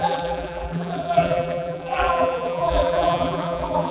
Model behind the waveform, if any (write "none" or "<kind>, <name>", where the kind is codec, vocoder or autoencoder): vocoder, BigVGAN v2